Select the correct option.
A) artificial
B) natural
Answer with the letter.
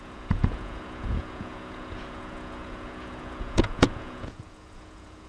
A